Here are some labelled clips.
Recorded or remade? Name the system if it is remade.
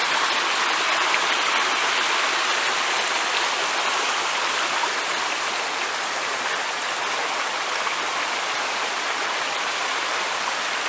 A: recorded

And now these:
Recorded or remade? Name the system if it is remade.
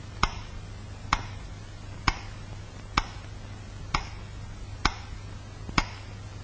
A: recorded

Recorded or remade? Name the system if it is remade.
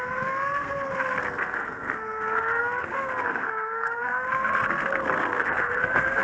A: remade, codec, SNAC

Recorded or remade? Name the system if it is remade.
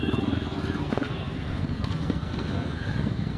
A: remade, codec, SNAC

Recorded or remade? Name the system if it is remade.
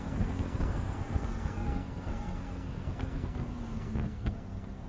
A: remade, codec, SNAC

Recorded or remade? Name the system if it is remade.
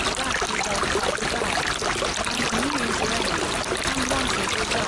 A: recorded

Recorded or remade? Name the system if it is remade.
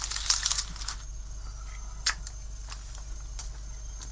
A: recorded